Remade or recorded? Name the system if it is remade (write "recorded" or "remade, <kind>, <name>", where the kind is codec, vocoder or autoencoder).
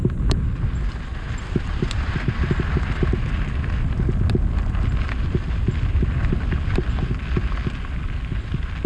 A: recorded